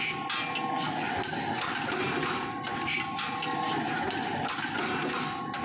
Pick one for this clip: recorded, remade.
recorded